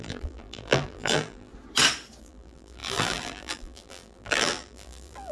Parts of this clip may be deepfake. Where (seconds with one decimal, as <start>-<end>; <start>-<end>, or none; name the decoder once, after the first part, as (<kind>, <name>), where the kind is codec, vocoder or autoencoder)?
0.0-1.5 (vocoder, BigVGAN v2); 2.2-5.3

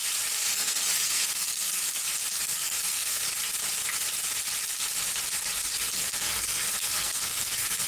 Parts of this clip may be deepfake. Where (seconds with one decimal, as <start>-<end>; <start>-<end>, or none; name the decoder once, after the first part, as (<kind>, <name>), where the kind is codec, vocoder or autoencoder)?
0.5-1.8 (codec, SNAC); 2.4-3.2; 5.8-7.9

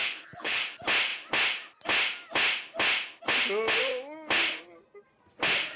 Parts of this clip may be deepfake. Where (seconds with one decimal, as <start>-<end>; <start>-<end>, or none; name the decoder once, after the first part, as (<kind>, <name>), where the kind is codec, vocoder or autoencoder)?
0.0-0.6 (codec, HILCodec)

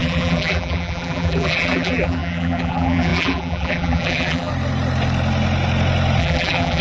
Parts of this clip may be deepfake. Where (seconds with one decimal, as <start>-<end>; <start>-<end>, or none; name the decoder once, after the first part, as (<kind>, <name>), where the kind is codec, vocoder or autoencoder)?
0.0-4.5 (vocoder, BigVGAN v2); 6.2-6.8

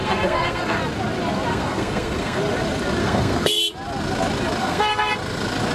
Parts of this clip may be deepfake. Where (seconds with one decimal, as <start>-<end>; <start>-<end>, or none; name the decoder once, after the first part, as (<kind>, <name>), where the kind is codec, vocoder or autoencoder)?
0.0-0.8 (codec, SNAC); 1.5-2.4; 3.0-3.6; 4.6-5.1

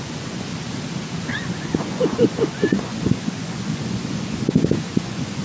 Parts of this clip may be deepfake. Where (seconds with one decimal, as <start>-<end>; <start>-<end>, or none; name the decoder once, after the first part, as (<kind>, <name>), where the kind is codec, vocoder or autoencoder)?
0.0-0.5 (vocoder, Vocos); 1.3-5.4

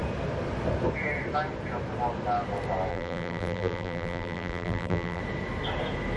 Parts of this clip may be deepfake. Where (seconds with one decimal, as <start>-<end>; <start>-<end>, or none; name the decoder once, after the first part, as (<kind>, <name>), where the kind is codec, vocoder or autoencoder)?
2.9-5.2 (vocoder, BigVGAN v2)

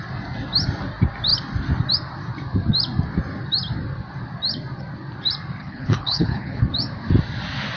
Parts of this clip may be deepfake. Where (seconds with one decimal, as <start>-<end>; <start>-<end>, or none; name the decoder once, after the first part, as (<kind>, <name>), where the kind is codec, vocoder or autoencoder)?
5.6-6.6 (codec, HILCodec)